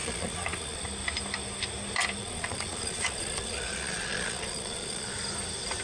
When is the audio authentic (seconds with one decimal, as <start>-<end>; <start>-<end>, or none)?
0.8-2.2; 5.1-5.8